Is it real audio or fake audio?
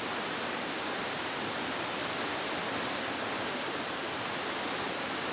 real